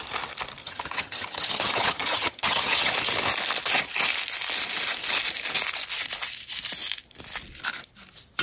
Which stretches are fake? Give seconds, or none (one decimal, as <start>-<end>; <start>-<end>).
0.6-2.9